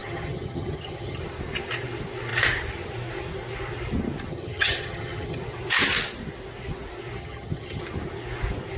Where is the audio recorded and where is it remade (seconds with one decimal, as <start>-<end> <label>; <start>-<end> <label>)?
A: 0.0-1.2 remade; 1.2-4.3 recorded; 4.3-5.4 remade; 5.4-7.2 recorded; 7.2-7.8 remade; 7.8-8.8 recorded